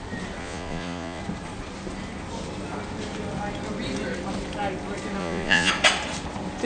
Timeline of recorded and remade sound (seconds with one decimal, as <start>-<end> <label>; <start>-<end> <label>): 0.0-0.4 recorded; 0.4-1.2 remade; 1.2-5.2 recorded; 5.2-5.7 remade; 5.7-6.7 recorded